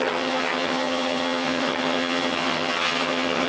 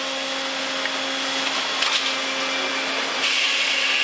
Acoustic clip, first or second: second